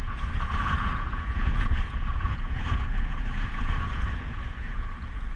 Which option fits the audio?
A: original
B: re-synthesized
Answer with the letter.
B